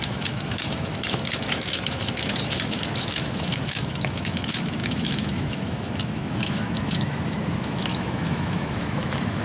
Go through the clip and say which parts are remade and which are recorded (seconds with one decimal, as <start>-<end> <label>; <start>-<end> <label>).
0.0-9.4 remade